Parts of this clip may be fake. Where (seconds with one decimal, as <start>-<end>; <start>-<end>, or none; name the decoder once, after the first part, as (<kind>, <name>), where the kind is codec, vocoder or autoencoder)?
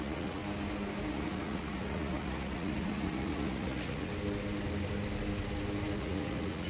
0.0-0.4 (vocoder, Vocos); 1.1-4.1; 6.0-6.7